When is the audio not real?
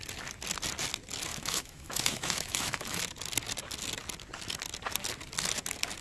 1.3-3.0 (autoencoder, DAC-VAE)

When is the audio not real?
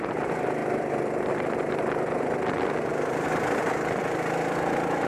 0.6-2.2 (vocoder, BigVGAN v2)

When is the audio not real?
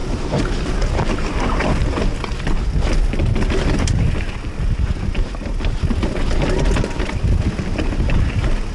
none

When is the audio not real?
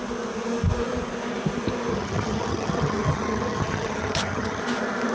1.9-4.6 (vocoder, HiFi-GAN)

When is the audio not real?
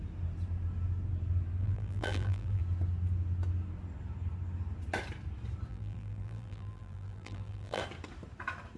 1.6-2.6 (vocoder, BigVGAN v2); 5.7-7.8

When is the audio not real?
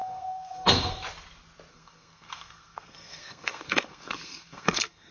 0.0-1.0 (codec, SNAC); 1.7-5.1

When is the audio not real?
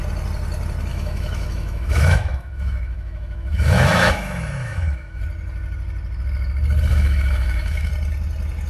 0.9-5.2 (autoencoder, DAC-VAE); 6.9-7.9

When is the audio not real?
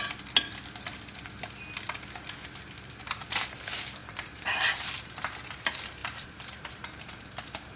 4.0-5.2 (vocoder, BigVGAN v2); 6.0-7.8